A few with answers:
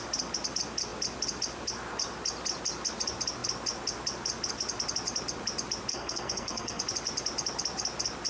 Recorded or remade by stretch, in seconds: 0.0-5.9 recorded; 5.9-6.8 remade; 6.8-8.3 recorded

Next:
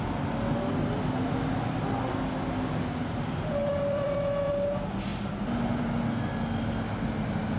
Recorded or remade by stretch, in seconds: 0.0-3.6 recorded; 3.6-4.5 remade; 4.5-7.6 recorded